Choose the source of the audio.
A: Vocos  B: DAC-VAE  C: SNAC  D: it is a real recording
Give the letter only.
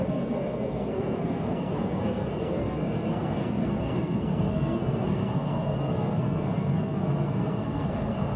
C